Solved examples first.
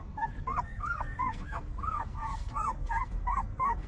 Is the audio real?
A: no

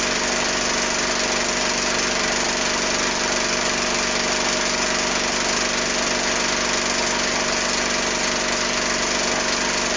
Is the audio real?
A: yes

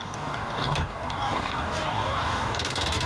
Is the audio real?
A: no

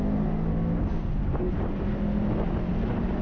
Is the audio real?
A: yes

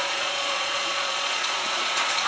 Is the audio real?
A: no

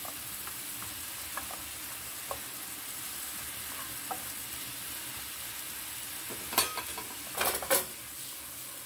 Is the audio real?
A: yes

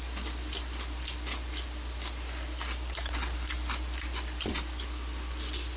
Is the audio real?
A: yes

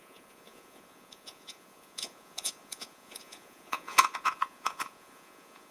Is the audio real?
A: no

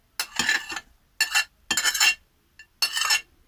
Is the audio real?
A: yes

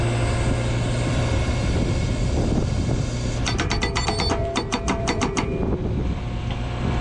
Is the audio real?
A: yes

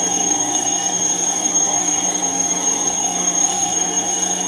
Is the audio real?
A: no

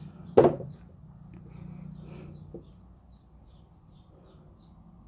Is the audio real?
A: yes